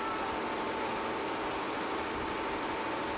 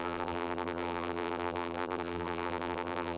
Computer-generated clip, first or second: second